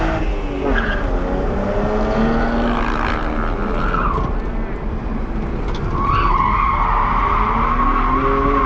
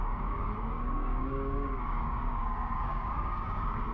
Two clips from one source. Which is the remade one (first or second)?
second